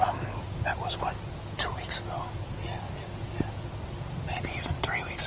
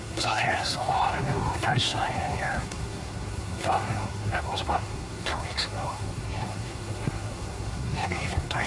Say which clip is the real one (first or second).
first